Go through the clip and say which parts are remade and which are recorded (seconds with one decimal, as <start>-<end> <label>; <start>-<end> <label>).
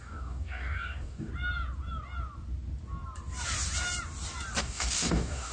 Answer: 0.0-1.3 remade; 1.3-4.6 recorded; 4.6-5.5 remade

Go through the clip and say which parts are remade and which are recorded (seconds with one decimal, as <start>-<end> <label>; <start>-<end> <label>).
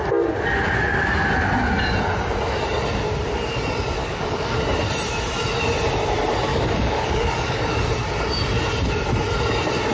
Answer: 0.0-4.0 recorded; 4.0-4.6 remade; 4.6-6.5 recorded; 6.5-7.9 remade; 7.9-9.9 recorded